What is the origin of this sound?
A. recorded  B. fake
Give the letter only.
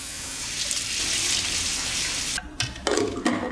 A